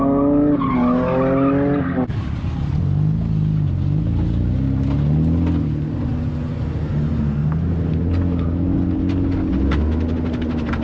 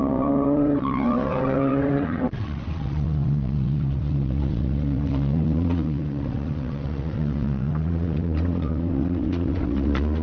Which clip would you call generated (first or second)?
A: second